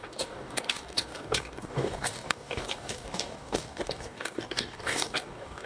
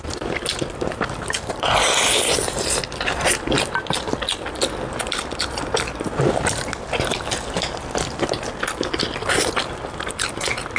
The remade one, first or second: first